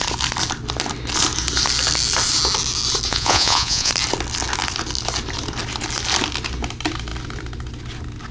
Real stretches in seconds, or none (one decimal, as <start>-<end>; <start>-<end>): 0.0-3.1; 3.9-8.3